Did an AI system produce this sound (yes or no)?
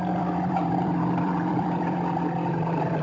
yes